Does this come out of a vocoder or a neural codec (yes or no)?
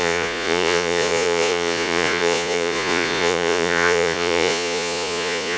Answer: yes